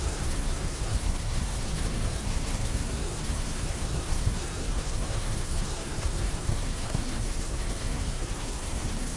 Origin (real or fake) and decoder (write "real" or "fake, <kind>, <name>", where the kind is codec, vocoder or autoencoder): fake, codec, SNAC